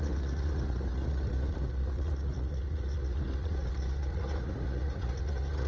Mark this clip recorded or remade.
remade